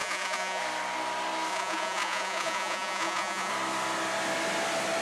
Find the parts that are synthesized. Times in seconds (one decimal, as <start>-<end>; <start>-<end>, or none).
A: 0.0-0.6; 1.5-3.5